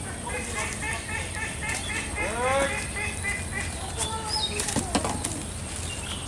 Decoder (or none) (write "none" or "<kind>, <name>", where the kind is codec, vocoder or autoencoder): none